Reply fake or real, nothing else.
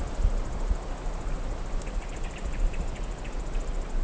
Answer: real